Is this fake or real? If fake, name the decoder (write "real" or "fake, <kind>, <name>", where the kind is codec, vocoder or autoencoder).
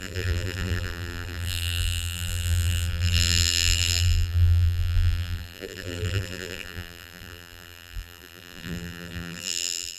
fake, vocoder, BigVGAN v2